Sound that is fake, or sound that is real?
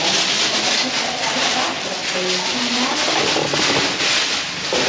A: real